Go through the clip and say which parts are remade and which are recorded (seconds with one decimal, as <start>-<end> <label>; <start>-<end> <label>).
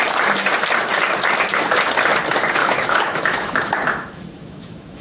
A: 0.0-2.6 recorded; 2.6-5.0 remade